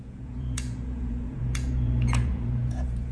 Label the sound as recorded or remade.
remade